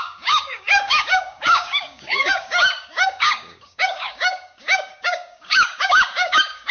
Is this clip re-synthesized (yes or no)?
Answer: yes